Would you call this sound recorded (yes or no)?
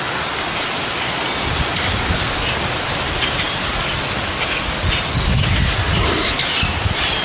yes